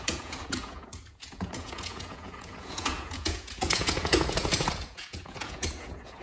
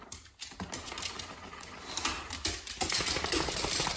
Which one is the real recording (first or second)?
second